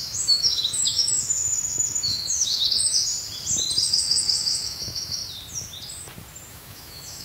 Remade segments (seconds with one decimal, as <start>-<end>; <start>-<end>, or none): 0.0-3.1; 3.9-5.2; 6.5-7.2